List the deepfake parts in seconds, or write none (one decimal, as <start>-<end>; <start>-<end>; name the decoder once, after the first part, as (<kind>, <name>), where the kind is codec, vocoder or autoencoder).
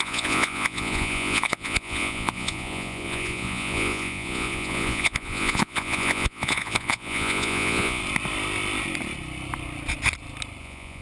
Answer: 0.0-8.0 (vocoder, Vocos); 10.6-11.0